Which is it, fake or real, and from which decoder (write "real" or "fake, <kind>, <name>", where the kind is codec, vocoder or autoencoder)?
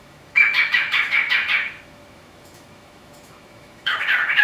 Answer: fake, autoencoder, DAC-VAE